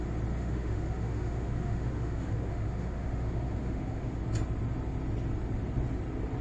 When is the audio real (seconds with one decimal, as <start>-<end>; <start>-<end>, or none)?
0.0-0.4; 4.2-6.4